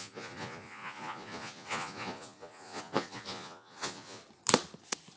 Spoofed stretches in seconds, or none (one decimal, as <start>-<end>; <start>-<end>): 0.0-4.2